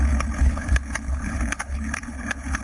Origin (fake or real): fake